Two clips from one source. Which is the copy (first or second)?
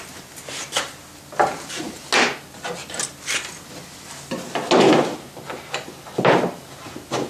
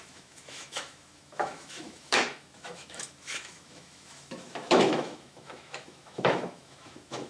second